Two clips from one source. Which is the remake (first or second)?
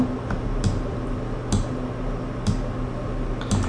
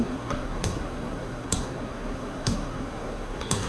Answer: second